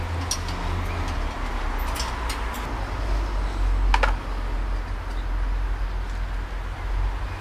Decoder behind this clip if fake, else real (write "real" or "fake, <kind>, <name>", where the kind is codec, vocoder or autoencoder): real